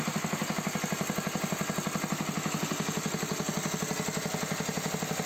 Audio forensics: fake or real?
real